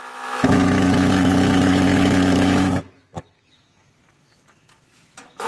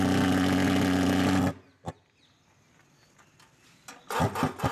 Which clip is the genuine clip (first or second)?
second